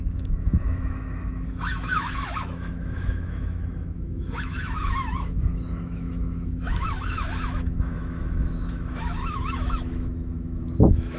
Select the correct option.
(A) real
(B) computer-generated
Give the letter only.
B